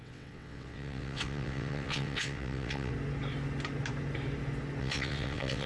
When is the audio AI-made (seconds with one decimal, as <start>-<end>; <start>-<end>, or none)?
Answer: 0.0-2.9; 4.8-5.7